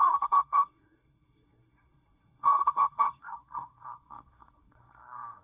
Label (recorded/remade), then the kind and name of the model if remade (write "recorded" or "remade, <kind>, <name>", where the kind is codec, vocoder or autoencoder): remade, codec, SNAC